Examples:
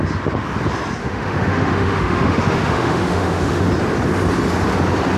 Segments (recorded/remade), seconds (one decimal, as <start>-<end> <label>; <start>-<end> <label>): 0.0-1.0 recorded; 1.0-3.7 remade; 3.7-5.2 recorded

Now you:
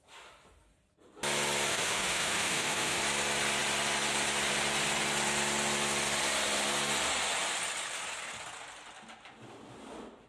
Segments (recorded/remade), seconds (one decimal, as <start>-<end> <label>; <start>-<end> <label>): 0.0-1.7 recorded; 1.7-3.0 remade; 3.0-10.3 recorded

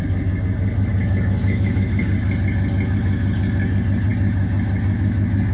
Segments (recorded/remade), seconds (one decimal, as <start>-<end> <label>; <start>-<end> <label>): 0.0-1.4 recorded; 1.4-2.0 remade; 2.0-5.5 recorded

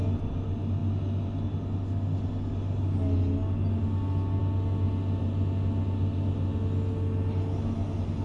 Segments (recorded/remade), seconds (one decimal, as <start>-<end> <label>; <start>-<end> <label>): 0.0-8.2 recorded

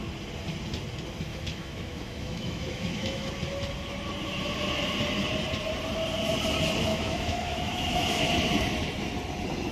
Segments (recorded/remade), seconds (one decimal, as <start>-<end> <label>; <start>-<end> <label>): 0.0-1.3 recorded; 1.3-3.3 remade; 3.3-6.9 recorded; 6.9-8.0 remade; 8.0-9.7 recorded